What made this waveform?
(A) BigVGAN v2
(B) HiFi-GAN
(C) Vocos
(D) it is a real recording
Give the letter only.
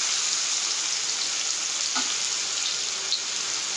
D